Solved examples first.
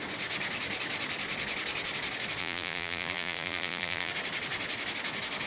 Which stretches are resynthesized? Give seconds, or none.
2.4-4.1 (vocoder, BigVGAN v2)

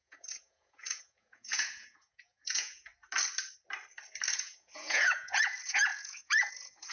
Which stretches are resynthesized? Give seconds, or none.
0.0-2.9 (vocoder, Vocos); 4.3-6.9

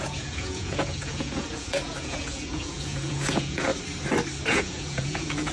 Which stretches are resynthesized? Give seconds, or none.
0.0-3.7 (vocoder, Vocos); 4.5-5.5